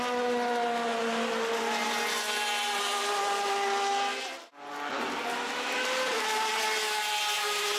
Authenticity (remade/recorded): recorded